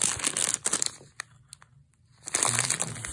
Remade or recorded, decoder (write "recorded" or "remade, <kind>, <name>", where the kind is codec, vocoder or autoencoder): recorded